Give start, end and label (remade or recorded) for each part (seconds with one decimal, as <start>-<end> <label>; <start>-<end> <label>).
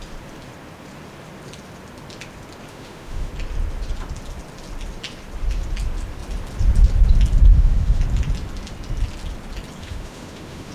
0.0-2.7 recorded; 2.7-3.3 remade; 3.3-7.5 recorded; 7.5-8.0 remade; 8.0-9.8 recorded; 9.8-10.7 remade